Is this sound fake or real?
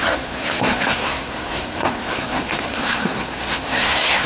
fake